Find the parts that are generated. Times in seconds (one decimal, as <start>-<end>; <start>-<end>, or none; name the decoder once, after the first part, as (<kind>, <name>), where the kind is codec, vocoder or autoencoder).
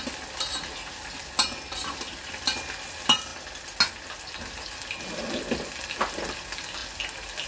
none